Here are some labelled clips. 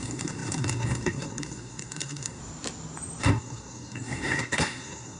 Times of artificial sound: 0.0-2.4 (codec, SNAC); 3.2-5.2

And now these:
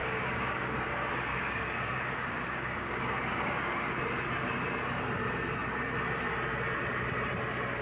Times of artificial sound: 0.0-0.8 (codec, DAC); 1.3-4.0

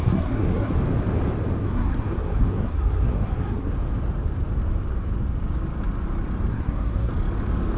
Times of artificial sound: 0.0-0.7 (codec, SNAC); 1.6-3.7; 6.5-7.1